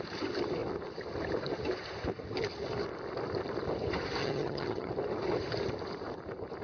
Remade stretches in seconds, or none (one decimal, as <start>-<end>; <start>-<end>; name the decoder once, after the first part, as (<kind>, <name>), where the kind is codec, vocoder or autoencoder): 4.2-4.9 (vocoder, HiFi-GAN)